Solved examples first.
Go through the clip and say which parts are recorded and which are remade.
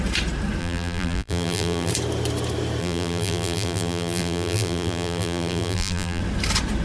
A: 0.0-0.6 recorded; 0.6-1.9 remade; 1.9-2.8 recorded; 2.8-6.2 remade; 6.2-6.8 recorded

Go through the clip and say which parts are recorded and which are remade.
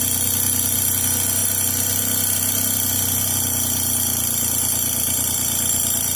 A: 0.0-6.2 recorded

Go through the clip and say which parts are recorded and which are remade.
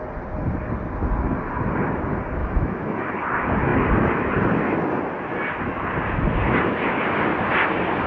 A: 0.0-2.4 recorded; 2.4-3.1 remade; 3.1-8.1 recorded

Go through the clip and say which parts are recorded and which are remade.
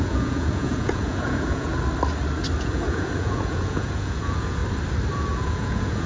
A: 0.0-1.7 remade; 1.7-2.6 recorded; 2.6-4.6 remade; 4.6-5.1 recorded; 5.1-6.1 remade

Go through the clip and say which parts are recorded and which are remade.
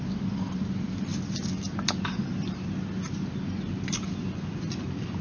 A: 0.0-5.2 recorded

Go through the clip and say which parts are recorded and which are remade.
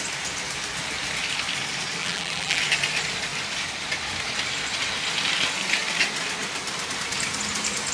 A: 0.0-2.0 recorded; 2.0-2.6 remade; 2.6-7.9 recorded